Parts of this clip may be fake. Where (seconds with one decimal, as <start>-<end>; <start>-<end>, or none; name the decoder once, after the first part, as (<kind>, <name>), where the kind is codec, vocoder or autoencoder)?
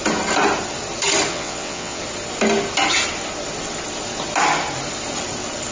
1.3-2.0 (vocoder, WaveNeXt)